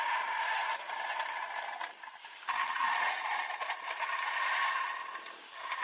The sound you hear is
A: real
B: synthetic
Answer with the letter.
A